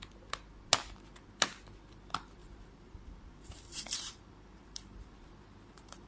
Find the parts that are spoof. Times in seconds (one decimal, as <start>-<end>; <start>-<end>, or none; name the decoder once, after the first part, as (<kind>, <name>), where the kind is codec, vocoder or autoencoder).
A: 2.4-6.1 (vocoder, BigVGAN v2)